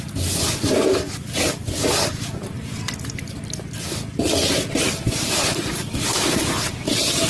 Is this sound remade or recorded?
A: recorded